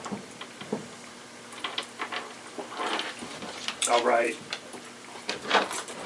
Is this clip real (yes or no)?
no